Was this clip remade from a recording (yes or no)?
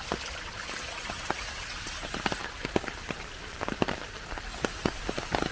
no